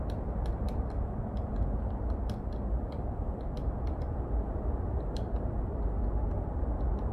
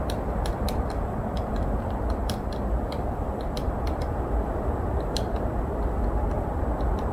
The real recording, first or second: first